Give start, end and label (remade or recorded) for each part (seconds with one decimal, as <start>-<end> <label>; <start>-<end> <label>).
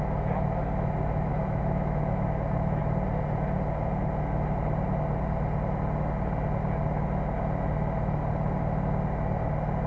0.0-1.3 recorded; 1.3-2.8 remade; 2.8-9.9 recorded